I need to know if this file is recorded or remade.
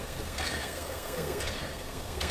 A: remade